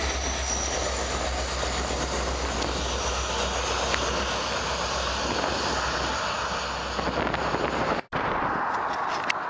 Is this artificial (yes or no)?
no